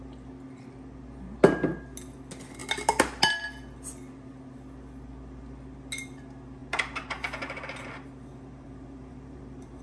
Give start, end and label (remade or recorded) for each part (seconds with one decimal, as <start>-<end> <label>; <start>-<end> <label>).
0.0-6.6 recorded; 6.6-9.8 remade